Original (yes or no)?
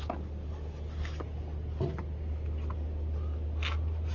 yes